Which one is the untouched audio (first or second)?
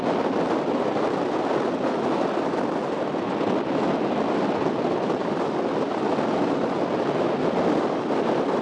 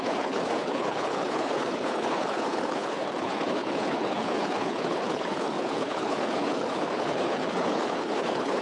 first